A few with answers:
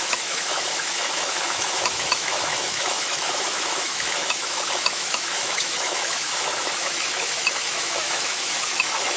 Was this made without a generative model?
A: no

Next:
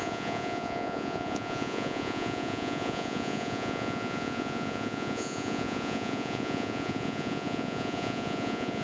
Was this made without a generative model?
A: no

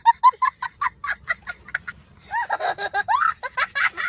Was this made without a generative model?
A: yes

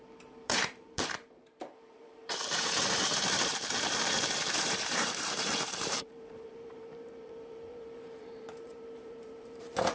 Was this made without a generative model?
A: no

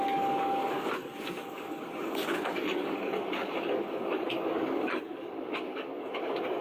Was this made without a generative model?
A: no